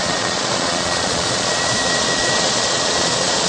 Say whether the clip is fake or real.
fake